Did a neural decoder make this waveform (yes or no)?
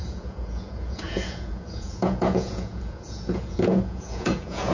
yes